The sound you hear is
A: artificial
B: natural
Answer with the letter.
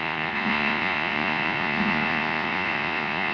A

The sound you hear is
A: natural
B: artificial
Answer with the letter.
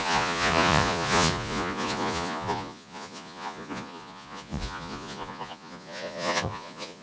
B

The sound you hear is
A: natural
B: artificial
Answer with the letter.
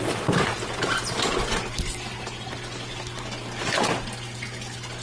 A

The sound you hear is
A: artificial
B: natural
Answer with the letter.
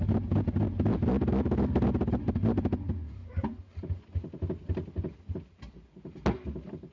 B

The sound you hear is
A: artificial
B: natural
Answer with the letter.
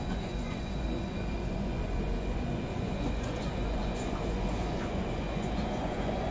A